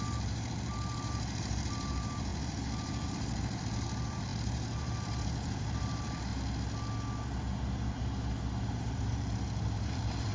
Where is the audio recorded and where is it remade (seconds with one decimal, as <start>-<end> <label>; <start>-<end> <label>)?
0.0-6.3 remade; 6.3-8.7 recorded; 8.7-10.3 remade

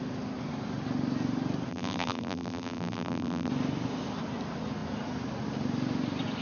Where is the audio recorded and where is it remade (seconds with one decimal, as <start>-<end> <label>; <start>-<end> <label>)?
0.0-1.7 recorded; 1.7-3.5 remade; 3.5-6.4 recorded

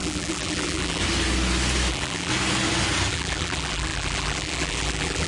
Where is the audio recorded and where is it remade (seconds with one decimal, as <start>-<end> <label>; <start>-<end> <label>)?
0.0-1.0 remade; 1.0-1.9 recorded; 1.9-2.3 remade; 2.3-3.1 recorded; 3.1-5.3 remade

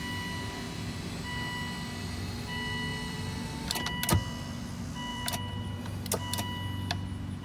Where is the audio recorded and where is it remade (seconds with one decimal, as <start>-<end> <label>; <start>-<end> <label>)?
0.0-2.9 recorded; 2.9-3.7 remade; 3.7-5.1 recorded; 5.1-5.8 remade; 5.8-7.4 recorded

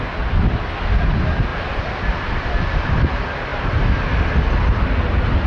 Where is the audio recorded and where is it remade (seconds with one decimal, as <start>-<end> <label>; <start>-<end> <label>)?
0.0-1.5 recorded; 1.5-2.0 remade; 2.0-5.5 recorded

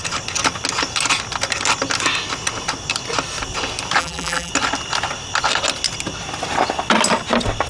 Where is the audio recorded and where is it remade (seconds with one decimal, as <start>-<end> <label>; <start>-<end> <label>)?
0.0-4.0 recorded; 4.0-4.5 remade; 4.5-7.7 recorded

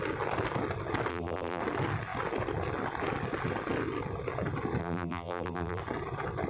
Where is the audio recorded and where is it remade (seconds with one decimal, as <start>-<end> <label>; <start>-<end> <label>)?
0.0-1.1 recorded; 1.1-1.6 remade; 1.6-4.8 recorded; 4.8-5.8 remade; 5.8-6.5 recorded

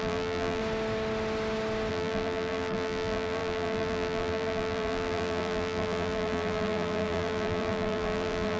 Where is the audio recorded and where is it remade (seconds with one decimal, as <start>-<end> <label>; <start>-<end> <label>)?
0.0-0.6 remade; 0.6-1.9 recorded; 1.9-8.6 remade